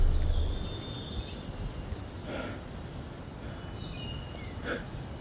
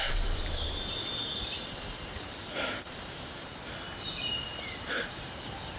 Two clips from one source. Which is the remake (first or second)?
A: second